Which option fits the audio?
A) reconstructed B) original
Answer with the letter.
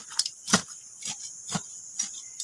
B